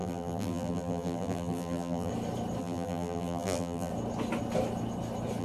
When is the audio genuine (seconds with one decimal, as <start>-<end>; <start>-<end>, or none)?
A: 2.1-2.6; 3.9-5.4